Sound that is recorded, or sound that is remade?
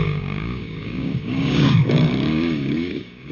remade